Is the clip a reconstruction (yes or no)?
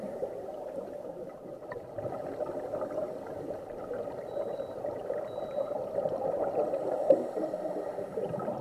yes